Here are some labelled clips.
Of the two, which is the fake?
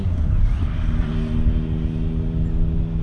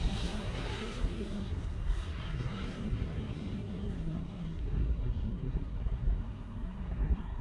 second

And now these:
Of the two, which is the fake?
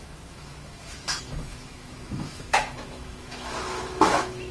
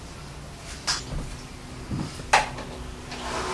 first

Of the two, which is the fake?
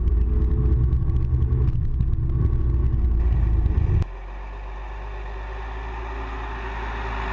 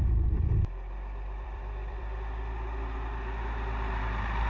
second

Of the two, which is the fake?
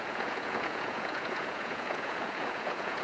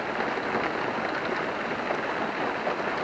first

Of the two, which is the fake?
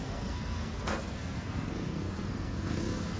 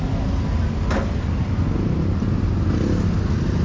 first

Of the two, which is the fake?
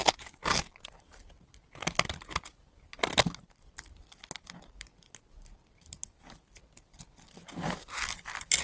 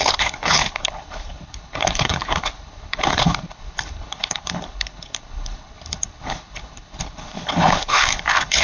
second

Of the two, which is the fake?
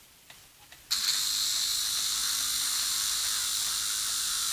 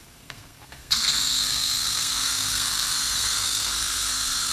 second